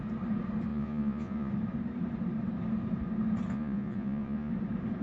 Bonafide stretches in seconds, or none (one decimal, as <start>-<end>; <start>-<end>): 0.0-0.7; 1.5-3.5; 4.5-5.0